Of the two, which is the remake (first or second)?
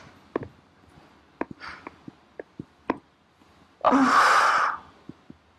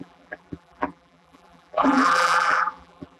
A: second